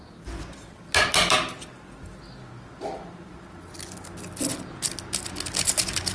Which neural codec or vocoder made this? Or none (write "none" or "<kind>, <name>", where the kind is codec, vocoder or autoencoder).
none